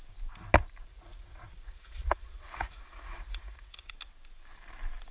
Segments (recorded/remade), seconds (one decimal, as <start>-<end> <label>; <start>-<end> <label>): 0.0-0.9 recorded; 0.9-3.9 remade; 3.9-5.1 recorded